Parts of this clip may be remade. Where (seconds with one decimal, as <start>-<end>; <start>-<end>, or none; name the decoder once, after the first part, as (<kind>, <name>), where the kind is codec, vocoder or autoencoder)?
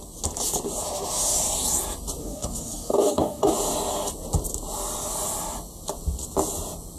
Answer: 2.2-3.5 (codec, DAC)